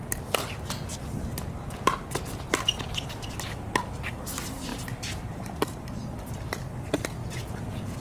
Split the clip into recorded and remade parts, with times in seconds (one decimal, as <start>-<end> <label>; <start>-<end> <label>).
0.0-7.2 recorded; 7.2-8.0 remade